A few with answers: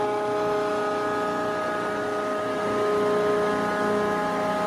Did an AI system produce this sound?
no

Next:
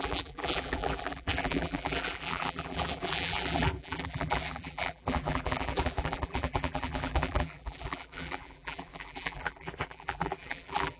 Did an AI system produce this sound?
yes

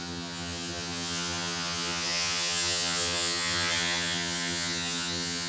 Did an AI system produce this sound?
yes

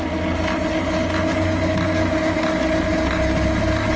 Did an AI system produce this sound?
no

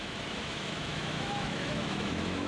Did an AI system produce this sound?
yes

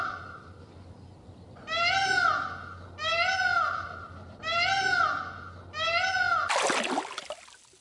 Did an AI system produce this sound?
no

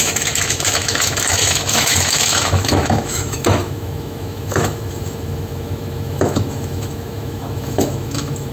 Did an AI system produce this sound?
yes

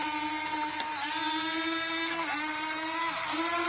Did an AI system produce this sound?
no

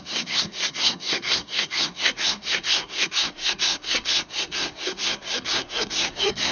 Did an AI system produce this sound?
yes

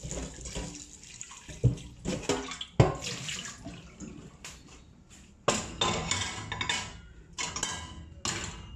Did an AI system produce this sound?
no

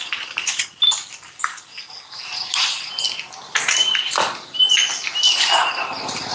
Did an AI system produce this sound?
no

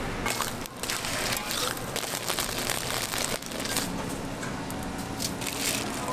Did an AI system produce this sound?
no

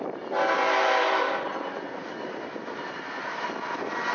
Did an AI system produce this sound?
no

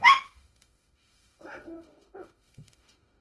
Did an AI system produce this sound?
yes